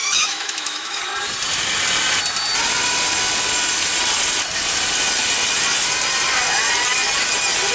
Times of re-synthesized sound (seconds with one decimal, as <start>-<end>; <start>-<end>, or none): 0.0-1.0